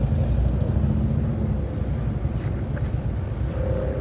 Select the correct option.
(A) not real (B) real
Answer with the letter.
B